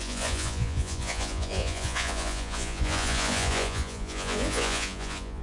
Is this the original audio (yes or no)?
no